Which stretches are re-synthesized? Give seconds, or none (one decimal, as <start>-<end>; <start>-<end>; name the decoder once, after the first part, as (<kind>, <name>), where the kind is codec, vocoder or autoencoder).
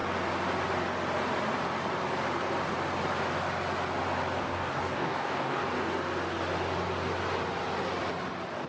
4.4-5.6 (codec, DAC)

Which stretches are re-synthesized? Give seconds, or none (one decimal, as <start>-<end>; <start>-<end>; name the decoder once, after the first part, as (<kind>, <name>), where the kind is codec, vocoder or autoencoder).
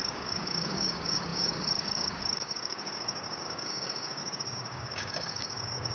0.0-5.9 (codec, DAC)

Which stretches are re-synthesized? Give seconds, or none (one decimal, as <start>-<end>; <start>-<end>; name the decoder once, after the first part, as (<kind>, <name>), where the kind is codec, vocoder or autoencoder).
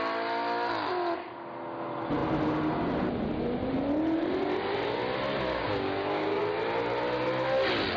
5.5-6.4 (codec, DAC)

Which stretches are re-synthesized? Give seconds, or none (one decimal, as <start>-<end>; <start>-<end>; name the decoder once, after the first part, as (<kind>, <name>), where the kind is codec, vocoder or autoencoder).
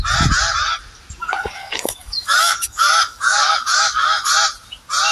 1.2-4.3 (codec, DAC)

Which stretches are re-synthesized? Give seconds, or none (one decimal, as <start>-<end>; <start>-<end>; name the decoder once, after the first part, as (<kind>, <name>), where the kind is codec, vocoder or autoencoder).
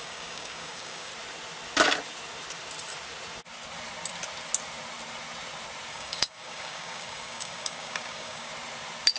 0.0-1.1 (codec, DAC); 5.9-8.5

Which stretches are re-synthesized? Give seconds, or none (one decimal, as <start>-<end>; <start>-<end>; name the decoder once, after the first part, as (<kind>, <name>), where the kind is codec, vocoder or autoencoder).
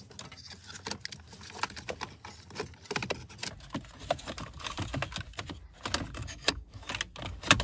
6.2-6.9 (codec, DAC)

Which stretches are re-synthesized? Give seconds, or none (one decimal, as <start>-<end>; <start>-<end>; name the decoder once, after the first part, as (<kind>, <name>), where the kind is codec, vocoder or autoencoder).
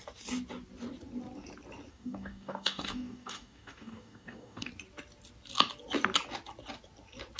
1.9-4.7 (codec, DAC)